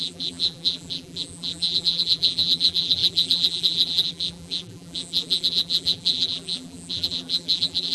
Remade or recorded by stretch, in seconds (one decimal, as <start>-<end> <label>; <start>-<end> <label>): 0.0-7.9 remade